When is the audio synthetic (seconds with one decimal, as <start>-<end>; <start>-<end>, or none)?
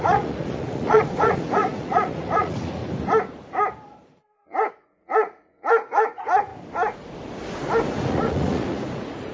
0.0-2.8; 4.7-6.5; 7.9-9.3